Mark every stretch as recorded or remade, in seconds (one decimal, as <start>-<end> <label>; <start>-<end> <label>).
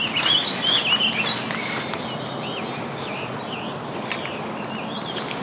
0.0-5.4 recorded